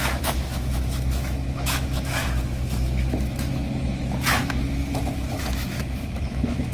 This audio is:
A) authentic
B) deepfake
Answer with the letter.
B